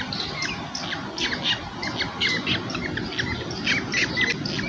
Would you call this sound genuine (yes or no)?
yes